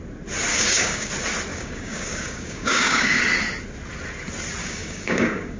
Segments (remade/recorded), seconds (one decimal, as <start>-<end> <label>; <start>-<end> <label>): 0.0-0.5 recorded; 0.5-1.1 remade; 1.1-1.5 recorded; 1.5-3.2 remade; 3.2-4.6 recorded; 4.6-5.6 remade

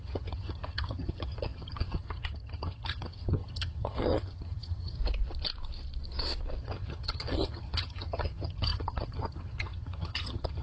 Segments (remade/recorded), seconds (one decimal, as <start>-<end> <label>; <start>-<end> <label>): 0.0-5.0 remade; 5.0-6.6 recorded; 6.6-10.6 remade

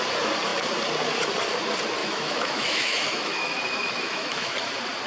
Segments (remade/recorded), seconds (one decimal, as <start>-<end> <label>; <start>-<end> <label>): 0.0-2.0 recorded; 2.0-4.5 remade; 4.5-5.1 recorded

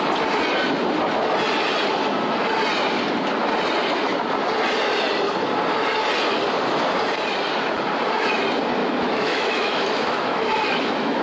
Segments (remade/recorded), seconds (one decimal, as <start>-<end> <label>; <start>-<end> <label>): 0.0-8.8 recorded; 8.8-11.2 remade

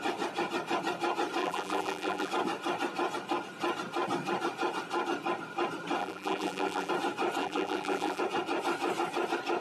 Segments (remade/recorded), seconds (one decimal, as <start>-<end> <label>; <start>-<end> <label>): 0.0-1.4 recorded; 1.4-2.3 remade; 2.3-6.0 recorded; 6.0-6.9 remade; 6.9-7.4 recorded; 7.4-8.2 remade; 8.2-9.6 recorded

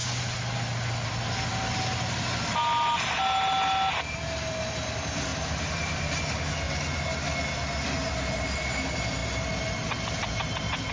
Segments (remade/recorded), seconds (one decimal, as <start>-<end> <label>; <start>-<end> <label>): 0.0-5.3 recorded; 5.3-6.2 remade; 6.2-10.9 recorded

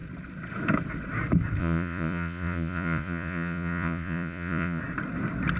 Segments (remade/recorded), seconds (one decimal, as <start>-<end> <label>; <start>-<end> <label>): 0.0-1.6 recorded; 1.6-4.8 remade; 4.8-5.6 recorded

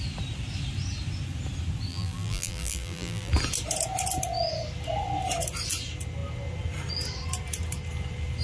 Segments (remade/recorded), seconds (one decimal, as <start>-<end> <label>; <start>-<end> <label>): 0.0-1.9 recorded; 1.9-3.3 remade; 3.3-8.4 recorded